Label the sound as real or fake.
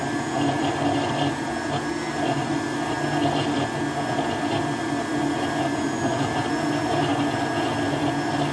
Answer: real